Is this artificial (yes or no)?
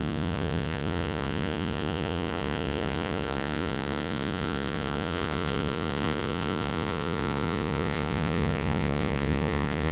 yes